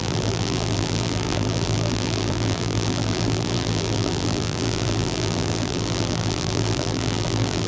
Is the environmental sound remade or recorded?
remade